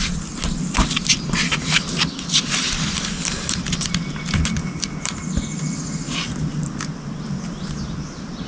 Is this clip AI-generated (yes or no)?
no